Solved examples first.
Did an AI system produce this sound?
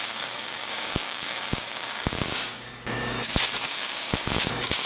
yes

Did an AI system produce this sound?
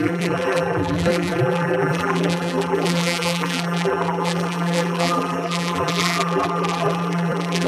yes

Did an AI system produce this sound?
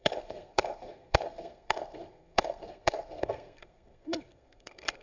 yes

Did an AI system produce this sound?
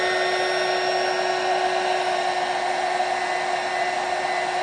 no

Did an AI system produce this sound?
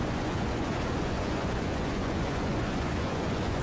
yes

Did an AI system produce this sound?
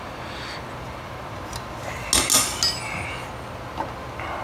no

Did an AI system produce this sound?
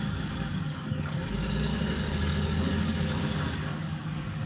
yes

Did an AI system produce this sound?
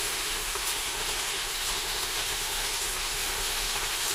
yes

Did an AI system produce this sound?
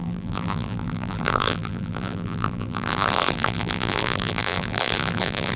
yes